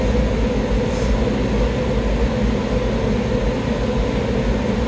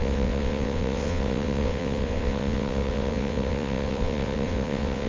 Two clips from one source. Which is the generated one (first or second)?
second